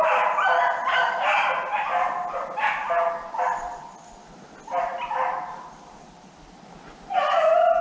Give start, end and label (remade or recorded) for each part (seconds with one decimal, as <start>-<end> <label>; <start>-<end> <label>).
0.0-7.8 recorded